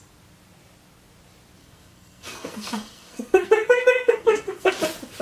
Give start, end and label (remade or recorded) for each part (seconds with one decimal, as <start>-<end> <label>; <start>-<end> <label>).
0.0-1.6 recorded; 1.6-4.7 remade; 4.7-5.2 recorded